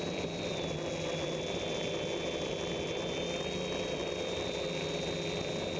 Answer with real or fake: real